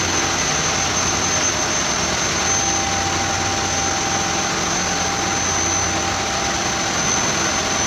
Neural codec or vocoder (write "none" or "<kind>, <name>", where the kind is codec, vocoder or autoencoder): none